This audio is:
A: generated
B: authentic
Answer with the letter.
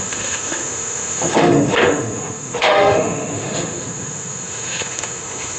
A